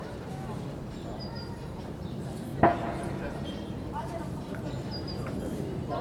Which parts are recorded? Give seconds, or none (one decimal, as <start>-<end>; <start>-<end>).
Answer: 2.5-3.3